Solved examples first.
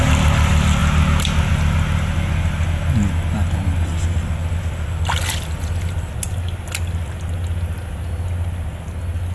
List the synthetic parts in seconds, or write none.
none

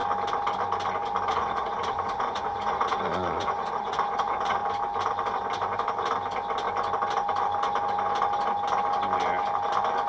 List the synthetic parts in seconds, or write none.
1.3-4.6 (vocoder, Vocos)

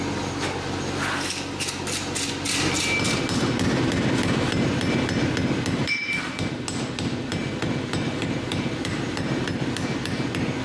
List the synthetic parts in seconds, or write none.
5.8-6.4 (vocoder, BigVGAN v2); 7.4-9.4

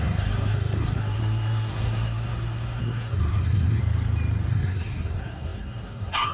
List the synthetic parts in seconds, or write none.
0.0-3.8 (codec, SNAC); 4.5-6.3

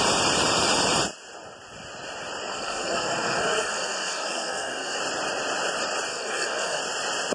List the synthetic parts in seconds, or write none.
2.5-5.0 (codec, SNAC); 6.1-6.8